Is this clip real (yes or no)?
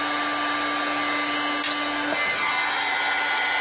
yes